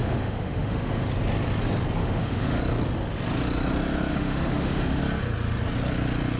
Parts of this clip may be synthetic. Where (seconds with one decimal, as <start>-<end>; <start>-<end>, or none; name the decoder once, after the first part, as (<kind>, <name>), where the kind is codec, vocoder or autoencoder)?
0.0-1.1 (autoencoder, DAC-VAE); 2.0-2.6; 4.1-5.0